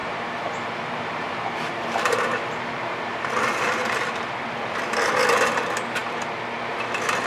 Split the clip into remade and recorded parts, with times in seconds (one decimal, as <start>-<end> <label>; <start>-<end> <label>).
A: 0.0-4.4 remade; 4.4-7.3 recorded